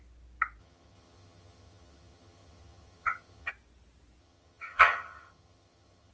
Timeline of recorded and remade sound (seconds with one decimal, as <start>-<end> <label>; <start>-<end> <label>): 0.0-0.6 recorded; 0.6-3.5 remade; 3.5-4.2 recorded; 4.2-6.1 remade